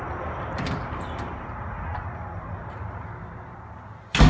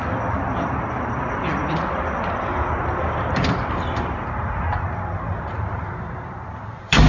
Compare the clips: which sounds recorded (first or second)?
first